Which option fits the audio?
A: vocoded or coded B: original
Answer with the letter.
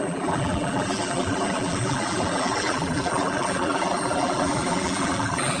A